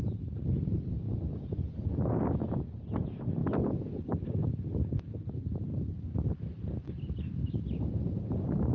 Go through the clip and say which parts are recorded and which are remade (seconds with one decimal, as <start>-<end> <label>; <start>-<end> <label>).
0.0-8.7 recorded